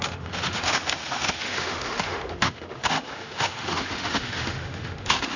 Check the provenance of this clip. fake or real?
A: fake